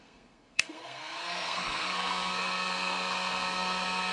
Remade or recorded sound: remade